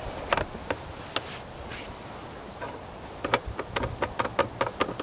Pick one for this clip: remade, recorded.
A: recorded